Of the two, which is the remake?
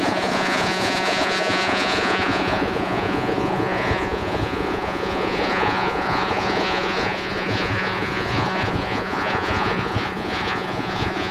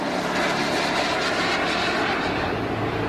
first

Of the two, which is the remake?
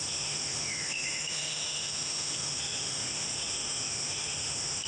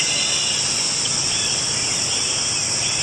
first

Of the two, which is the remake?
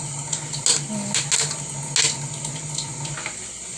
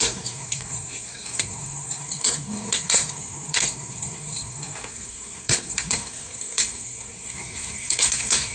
second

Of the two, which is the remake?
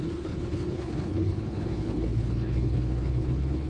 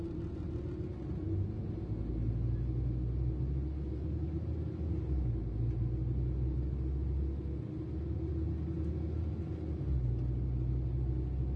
first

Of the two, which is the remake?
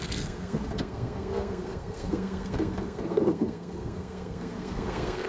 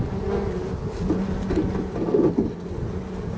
first